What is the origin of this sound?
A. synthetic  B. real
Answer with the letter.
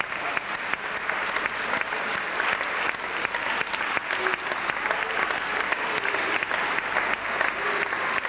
B